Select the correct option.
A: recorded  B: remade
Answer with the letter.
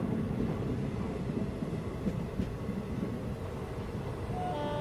A